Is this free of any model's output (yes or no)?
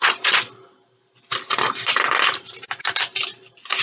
yes